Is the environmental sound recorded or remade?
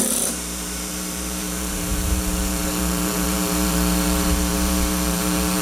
remade